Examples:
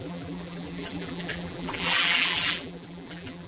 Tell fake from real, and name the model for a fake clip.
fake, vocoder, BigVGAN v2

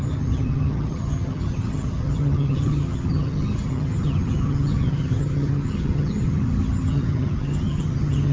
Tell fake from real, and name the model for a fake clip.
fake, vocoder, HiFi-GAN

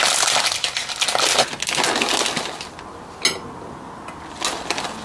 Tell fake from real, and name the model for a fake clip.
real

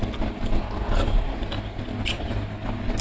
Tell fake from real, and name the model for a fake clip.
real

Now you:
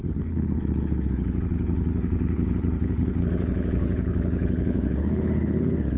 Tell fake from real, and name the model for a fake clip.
fake, codec, HILCodec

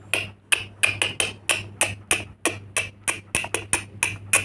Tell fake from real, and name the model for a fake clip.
real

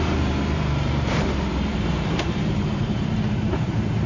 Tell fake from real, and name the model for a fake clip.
fake, vocoder, BigVGAN v2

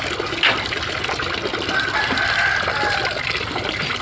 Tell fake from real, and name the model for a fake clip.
real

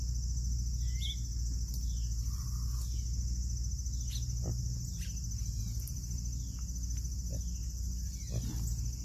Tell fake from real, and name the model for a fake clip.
real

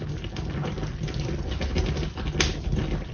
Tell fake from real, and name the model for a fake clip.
real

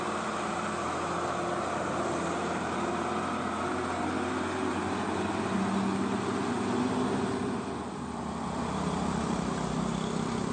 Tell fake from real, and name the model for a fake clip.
real